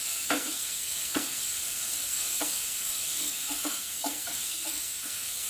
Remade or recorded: remade